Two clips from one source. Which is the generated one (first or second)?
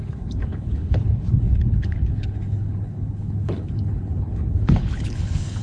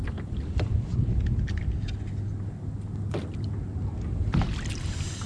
first